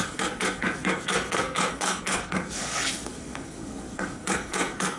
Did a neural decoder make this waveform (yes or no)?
yes